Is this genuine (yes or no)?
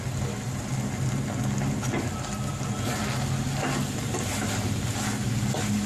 yes